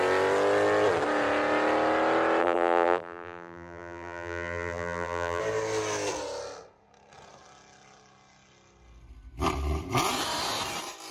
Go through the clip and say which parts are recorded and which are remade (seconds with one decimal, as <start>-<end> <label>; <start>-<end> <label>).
0.0-2.4 recorded; 2.4-5.4 remade; 5.4-11.1 recorded